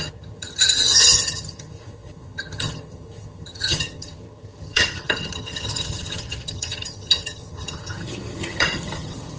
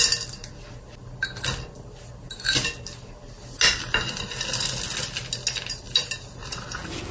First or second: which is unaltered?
second